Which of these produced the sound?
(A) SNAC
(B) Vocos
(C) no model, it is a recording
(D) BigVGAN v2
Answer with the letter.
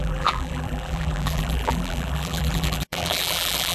D